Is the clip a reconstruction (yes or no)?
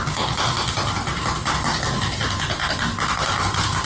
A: no